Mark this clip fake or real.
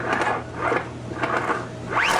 real